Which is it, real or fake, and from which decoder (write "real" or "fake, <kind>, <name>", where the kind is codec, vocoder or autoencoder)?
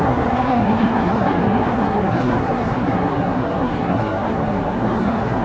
fake, codec, SNAC